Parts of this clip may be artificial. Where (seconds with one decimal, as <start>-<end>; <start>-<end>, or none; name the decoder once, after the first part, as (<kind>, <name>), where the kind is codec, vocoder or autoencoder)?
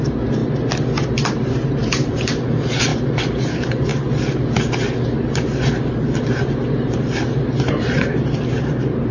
0.0-0.4 (vocoder, BigVGAN v2); 1.3-2.9; 3.4-3.9; 7.5-9.1